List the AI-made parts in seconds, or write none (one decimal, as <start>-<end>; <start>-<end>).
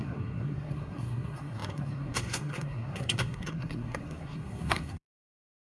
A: 0.0-5.8